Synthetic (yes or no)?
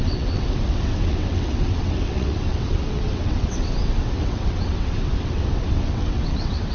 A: yes